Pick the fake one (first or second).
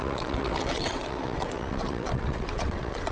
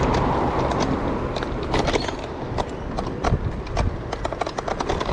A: first